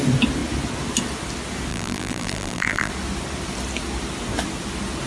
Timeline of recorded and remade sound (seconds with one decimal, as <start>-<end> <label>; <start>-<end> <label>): 0.0-1.7 recorded; 1.7-2.9 remade; 2.9-5.1 recorded